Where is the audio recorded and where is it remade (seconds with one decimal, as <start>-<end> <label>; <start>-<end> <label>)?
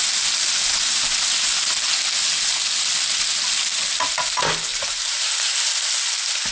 0.0-4.7 recorded; 4.7-5.7 remade; 5.7-6.5 recorded